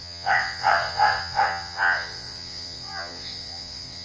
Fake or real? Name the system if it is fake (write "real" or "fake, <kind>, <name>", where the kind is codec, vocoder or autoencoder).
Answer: fake, vocoder, WaveNeXt